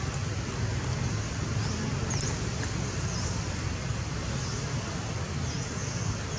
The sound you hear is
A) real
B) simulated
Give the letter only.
A